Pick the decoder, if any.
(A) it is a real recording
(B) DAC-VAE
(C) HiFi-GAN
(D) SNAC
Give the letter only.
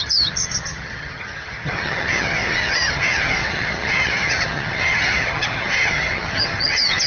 C